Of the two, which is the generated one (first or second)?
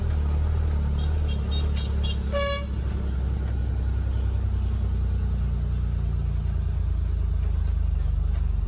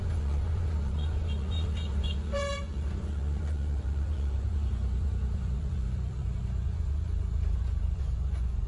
second